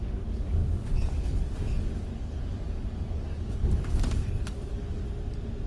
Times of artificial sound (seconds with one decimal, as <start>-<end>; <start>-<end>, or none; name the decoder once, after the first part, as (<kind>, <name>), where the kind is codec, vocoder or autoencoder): 0.0-5.0 (codec, DAC)